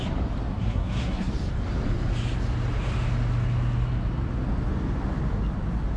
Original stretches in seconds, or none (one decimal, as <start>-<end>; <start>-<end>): 0.0-0.5; 1.3-6.0